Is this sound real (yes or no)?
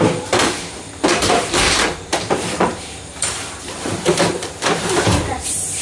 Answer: no